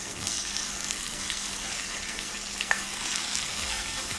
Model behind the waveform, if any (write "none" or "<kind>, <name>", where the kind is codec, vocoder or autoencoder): codec, SNAC